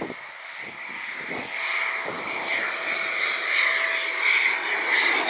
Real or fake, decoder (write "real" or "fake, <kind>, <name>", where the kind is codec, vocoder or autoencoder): real